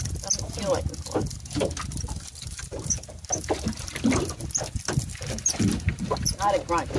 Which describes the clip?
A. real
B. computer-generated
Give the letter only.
A